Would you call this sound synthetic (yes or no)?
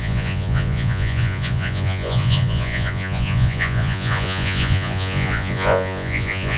yes